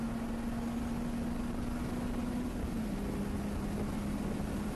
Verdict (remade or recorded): recorded